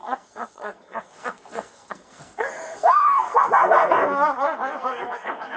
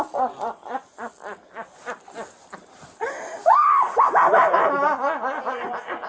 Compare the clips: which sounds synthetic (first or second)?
first